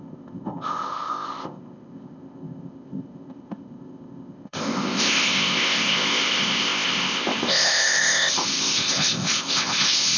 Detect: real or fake fake